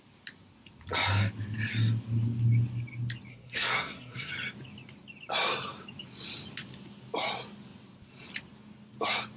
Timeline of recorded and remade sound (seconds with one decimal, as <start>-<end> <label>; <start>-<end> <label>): 0.0-3.3 recorded; 3.3-4.3 remade; 4.3-9.4 recorded